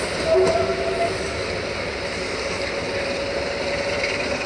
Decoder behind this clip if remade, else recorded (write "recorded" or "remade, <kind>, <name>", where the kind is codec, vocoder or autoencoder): recorded